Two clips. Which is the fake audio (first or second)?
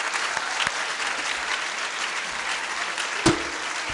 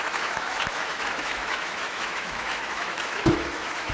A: second